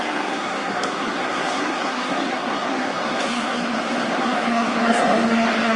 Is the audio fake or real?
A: fake